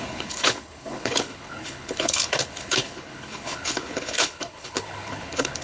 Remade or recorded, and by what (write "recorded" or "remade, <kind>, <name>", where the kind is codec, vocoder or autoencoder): remade, codec, HILCodec